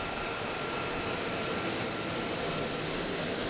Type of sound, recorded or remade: recorded